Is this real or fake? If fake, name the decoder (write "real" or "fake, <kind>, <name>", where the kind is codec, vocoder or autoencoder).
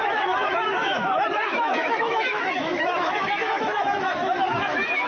fake, autoencoder, DAC-VAE